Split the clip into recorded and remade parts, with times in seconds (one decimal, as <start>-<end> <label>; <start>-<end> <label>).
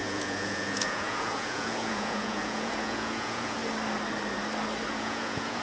0.0-3.6 remade; 3.6-4.9 recorded; 4.9-5.6 remade